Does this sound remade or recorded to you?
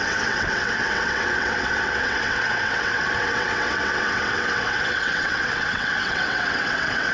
remade